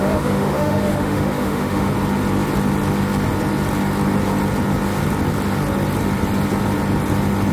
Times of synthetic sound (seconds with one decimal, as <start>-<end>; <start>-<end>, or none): 0.0-1.9